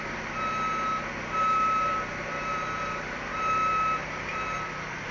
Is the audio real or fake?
fake